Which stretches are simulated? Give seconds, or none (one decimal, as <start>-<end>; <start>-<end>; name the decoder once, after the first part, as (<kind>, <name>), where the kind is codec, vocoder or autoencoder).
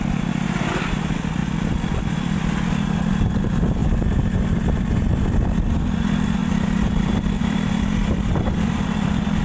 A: 0.0-1.4 (vocoder, BigVGAN v2); 2.1-9.4